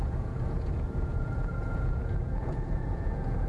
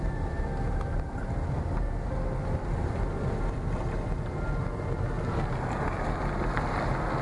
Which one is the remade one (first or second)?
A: first